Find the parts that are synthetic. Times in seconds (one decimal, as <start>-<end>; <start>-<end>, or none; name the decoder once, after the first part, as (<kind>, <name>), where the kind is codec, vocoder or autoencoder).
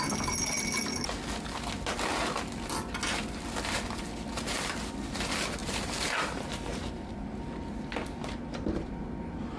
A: 5.6-7.1 (vocoder, BigVGAN v2)